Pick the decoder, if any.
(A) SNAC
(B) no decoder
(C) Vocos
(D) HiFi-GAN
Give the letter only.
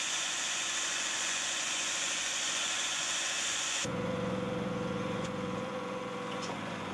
C